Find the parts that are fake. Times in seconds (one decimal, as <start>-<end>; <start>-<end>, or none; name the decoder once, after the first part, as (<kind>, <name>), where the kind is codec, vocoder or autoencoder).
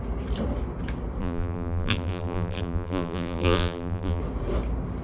1.2-4.2 (vocoder, BigVGAN v2)